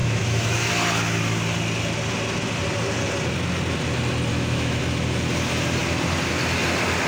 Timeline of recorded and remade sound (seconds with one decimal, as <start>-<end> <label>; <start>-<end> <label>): 0.0-0.7 remade; 0.7-4.3 recorded; 4.3-4.8 remade; 4.8-7.1 recorded